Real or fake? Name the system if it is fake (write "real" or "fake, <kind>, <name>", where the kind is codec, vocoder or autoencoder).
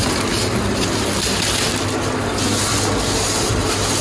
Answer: real